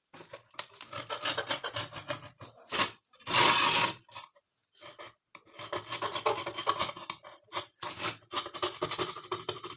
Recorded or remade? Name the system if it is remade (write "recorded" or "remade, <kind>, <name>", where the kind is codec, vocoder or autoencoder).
recorded